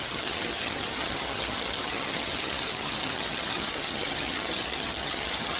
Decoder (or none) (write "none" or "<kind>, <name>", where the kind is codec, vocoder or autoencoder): vocoder, HiFi-GAN